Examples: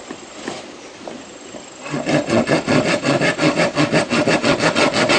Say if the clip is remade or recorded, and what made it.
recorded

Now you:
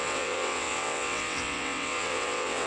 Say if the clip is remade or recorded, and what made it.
remade, vocoder, WaveNeXt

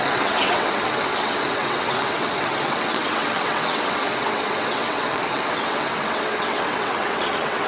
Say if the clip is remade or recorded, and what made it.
remade, vocoder, WaveNeXt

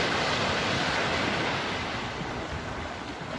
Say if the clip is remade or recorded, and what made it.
recorded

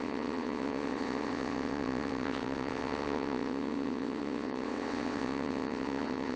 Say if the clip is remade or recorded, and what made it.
remade, vocoder, WaveNeXt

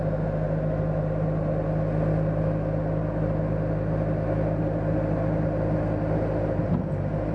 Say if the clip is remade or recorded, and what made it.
recorded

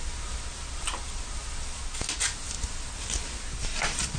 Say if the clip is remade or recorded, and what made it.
recorded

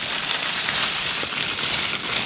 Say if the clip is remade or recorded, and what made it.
recorded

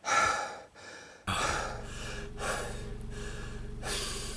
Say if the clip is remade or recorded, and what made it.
recorded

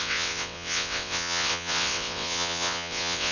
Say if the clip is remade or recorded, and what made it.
remade, vocoder, WaveNeXt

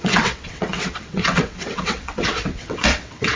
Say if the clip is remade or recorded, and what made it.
remade, vocoder, WaveNeXt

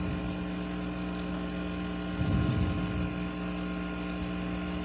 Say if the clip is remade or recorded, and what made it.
recorded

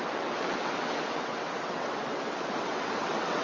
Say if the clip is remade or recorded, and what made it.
remade, vocoder, WaveNeXt